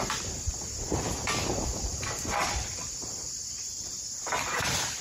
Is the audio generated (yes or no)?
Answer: no